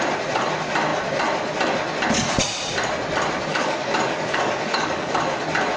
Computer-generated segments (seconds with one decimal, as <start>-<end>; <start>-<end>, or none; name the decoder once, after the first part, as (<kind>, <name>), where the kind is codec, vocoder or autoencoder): 3.5-5.2 (codec, DAC)